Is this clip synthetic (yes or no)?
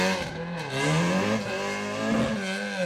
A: no